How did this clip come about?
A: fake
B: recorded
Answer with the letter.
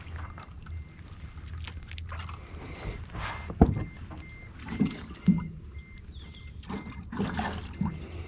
B